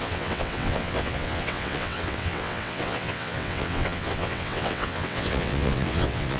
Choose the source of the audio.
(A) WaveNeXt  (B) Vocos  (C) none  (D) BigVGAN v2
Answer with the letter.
A